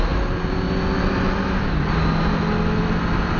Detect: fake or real real